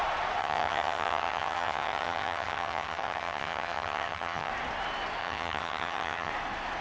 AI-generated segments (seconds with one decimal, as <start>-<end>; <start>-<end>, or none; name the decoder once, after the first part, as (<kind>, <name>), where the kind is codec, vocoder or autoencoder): 0.4-4.5 (vocoder, HiFi-GAN); 5.2-6.3